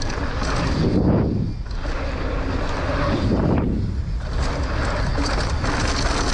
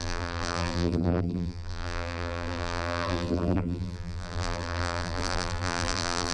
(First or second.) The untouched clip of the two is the first